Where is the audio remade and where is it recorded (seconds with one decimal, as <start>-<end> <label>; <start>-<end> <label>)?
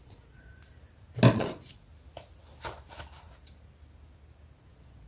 0.0-0.5 remade; 0.5-1.3 recorded; 1.3-1.9 remade; 1.9-4.6 recorded; 4.6-5.1 remade